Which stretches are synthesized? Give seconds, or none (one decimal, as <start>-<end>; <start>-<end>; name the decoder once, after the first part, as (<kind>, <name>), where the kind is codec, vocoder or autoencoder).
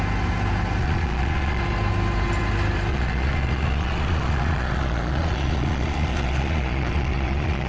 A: 0.8-1.6 (vocoder, Vocos); 2.9-7.7